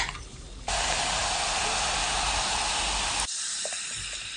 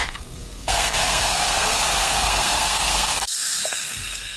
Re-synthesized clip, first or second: second